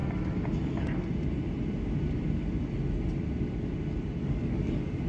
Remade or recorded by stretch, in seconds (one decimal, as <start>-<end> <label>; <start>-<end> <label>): 0.0-4.2 recorded; 4.2-5.1 remade